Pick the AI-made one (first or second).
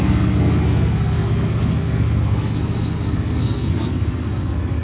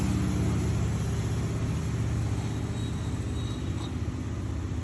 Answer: first